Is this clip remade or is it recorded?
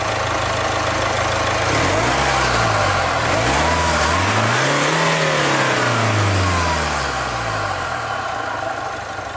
recorded